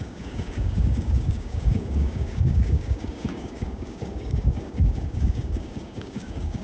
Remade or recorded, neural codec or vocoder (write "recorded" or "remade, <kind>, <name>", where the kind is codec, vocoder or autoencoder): remade, codec, DAC